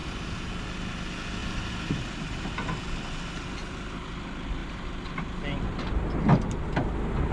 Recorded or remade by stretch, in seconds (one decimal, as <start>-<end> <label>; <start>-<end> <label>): 0.0-0.5 remade; 0.5-1.4 recorded; 1.4-2.5 remade; 2.5-4.6 recorded; 4.6-5.2 remade; 5.2-7.3 recorded